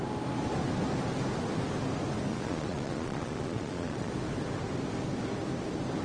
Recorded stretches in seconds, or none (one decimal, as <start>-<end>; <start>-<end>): 0.0-2.3; 4.1-6.0